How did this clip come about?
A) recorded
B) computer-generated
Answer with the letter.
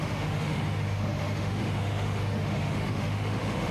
B